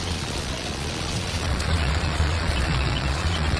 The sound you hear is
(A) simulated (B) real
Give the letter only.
A